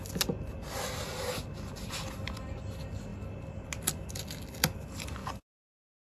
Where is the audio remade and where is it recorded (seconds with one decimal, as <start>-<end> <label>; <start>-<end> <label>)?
0.0-6.1 recorded